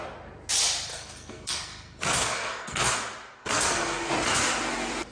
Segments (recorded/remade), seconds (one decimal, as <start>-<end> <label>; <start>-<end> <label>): 0.0-0.9 recorded; 0.9-2.9 remade; 2.9-3.4 recorded; 3.4-4.1 remade; 4.1-5.1 recorded